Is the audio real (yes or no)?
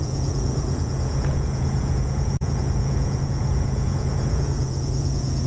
no